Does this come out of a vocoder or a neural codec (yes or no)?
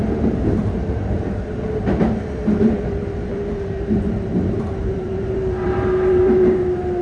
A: yes